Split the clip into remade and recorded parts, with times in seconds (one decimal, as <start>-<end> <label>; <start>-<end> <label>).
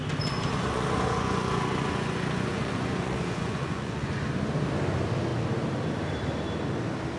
0.0-0.5 recorded; 0.5-4.2 remade; 4.2-7.2 recorded